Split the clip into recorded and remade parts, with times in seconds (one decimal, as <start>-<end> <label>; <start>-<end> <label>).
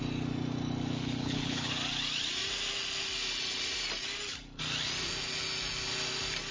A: 0.0-1.0 recorded; 1.0-1.7 remade; 1.7-6.5 recorded